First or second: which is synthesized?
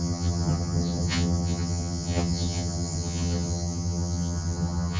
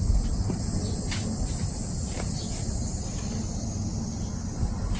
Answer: first